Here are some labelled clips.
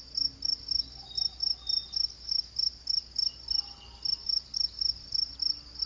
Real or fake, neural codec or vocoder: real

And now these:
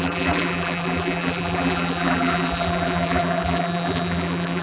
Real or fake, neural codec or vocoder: fake, vocoder, BigVGAN v2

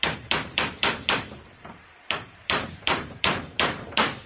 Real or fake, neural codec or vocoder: fake, vocoder, BigVGAN v2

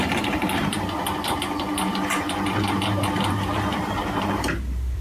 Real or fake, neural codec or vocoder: fake, vocoder, BigVGAN v2